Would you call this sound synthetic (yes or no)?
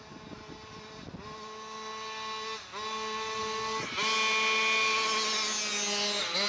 no